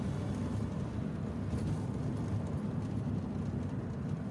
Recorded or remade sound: recorded